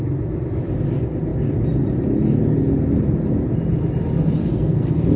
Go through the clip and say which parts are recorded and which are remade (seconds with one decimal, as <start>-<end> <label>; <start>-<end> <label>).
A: 0.0-4.4 recorded; 4.4-5.2 remade